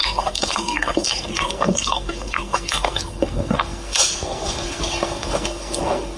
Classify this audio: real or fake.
fake